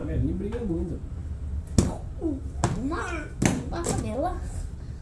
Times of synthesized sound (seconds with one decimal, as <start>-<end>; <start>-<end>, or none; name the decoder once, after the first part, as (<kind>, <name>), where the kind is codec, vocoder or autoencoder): none